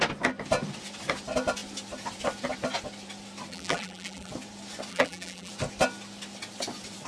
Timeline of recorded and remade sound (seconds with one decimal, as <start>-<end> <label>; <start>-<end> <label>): 0.0-3.5 recorded; 3.5-4.3 remade; 4.3-4.9 recorded; 4.9-5.5 remade; 5.5-7.1 recorded